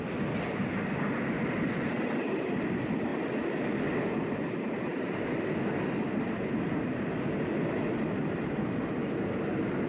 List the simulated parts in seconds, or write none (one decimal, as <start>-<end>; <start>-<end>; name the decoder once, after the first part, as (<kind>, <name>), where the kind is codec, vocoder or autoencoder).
none

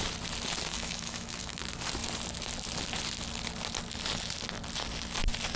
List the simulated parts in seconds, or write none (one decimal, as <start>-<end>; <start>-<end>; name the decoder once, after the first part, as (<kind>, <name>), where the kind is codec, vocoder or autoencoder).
0.7-1.6 (autoencoder, DAC-VAE)

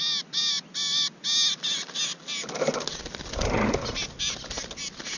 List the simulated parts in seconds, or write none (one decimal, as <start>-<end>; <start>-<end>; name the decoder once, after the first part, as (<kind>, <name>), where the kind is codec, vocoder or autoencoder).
none

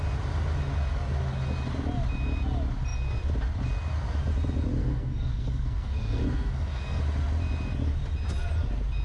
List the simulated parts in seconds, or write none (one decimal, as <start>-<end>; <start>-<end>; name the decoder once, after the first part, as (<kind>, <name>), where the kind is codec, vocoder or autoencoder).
4.8-7.0 (codec, SNAC)